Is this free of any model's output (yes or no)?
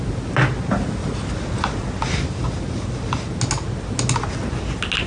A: yes